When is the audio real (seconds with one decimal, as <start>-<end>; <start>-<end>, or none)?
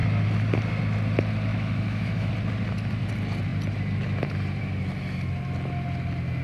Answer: 0.0-1.5; 2.3-6.4